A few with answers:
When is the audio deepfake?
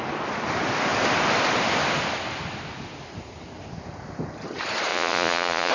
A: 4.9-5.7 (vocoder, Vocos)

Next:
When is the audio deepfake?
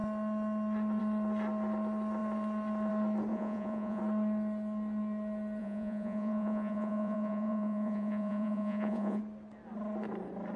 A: 3.3-4.0 (vocoder, Vocos); 5.6-9.2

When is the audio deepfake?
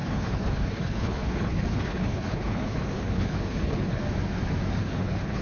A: 0.0-4.0 (codec, HILCodec); 4.8-5.4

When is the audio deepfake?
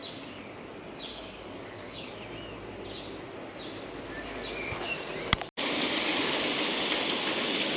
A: 1.1-2.1 (codec, DAC)